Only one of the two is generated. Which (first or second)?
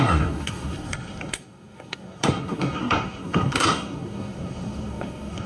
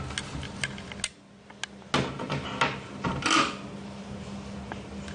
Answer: first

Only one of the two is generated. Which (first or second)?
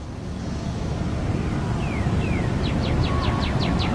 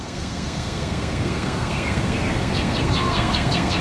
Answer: second